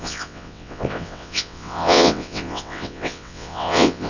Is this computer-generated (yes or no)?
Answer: yes